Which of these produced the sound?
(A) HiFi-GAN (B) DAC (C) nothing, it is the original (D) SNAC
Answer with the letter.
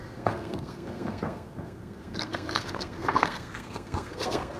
D